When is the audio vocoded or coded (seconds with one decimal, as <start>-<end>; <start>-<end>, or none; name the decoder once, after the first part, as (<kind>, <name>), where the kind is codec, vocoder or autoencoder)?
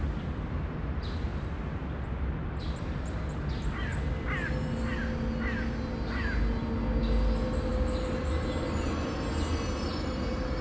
none